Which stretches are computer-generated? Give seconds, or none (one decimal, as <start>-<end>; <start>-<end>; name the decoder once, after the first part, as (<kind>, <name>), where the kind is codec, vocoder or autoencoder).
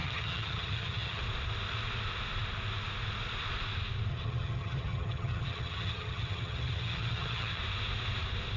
0.0-1.2 (vocoder, HiFi-GAN); 4.1-7.6